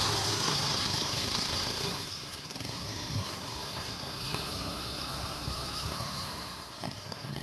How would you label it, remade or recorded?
remade